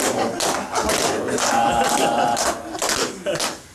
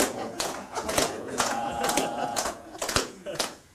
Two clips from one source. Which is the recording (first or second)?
first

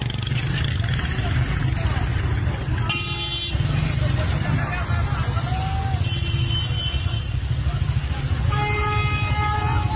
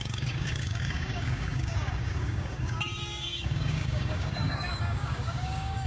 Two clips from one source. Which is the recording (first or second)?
first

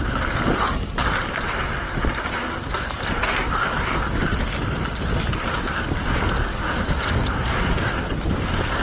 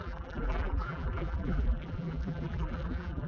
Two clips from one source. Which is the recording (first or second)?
first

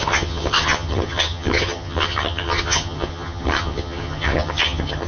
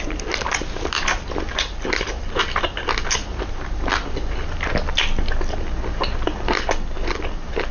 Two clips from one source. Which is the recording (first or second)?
second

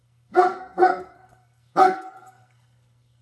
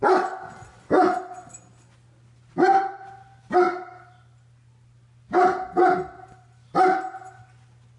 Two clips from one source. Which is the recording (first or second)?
second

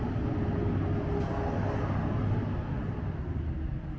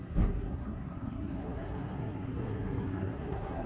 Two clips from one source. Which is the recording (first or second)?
first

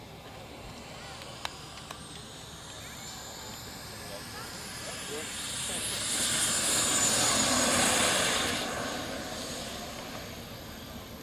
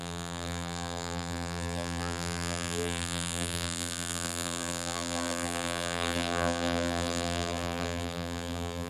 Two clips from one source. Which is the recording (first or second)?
first